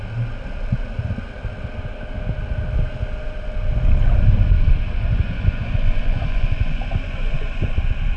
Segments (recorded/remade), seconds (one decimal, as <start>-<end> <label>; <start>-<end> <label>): 0.0-5.1 recorded; 5.1-7.7 remade; 7.7-8.2 recorded